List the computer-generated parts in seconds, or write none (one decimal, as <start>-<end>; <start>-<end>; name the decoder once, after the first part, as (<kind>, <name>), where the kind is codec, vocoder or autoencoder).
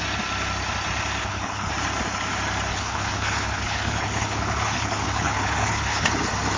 1.2-1.7 (codec, HILCodec); 2.7-6.1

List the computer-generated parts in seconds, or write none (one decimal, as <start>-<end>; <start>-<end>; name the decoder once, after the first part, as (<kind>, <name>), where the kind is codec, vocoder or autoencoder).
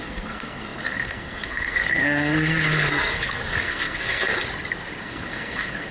0.0-4.3 (codec, SNAC); 5.0-5.9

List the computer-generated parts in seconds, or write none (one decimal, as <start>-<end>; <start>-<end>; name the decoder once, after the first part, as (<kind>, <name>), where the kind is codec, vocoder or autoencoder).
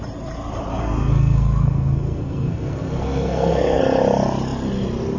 0.7-3.8 (codec, SNAC)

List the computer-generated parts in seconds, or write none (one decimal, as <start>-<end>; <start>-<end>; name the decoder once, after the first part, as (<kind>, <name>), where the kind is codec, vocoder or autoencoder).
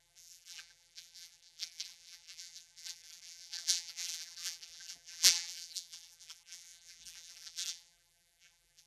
0.0-8.9 (vocoder, BigVGAN v2)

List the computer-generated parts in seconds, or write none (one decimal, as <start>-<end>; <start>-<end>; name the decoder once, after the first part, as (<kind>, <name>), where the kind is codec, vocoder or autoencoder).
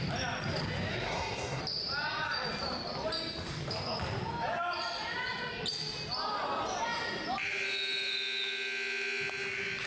0.9-1.6 (codec, SNAC)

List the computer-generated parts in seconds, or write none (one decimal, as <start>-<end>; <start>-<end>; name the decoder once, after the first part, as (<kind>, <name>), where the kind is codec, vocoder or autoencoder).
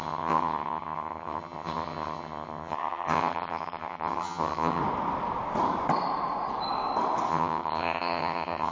0.0-4.8 (vocoder, HiFi-GAN); 7.3-8.7